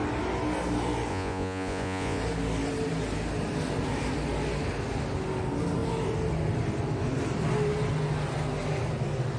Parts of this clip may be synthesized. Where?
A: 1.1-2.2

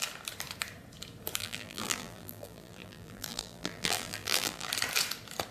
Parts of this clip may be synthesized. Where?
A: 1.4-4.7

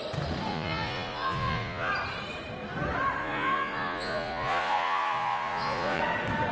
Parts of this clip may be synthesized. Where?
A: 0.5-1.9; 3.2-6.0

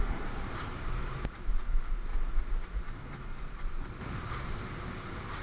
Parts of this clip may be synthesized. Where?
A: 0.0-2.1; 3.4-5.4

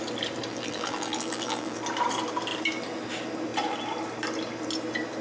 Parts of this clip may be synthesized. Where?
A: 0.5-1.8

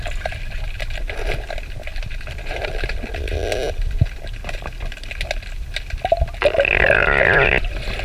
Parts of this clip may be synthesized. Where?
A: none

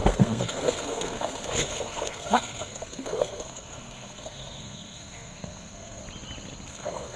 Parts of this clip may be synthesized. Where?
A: 0.0-6.0; 6.7-7.2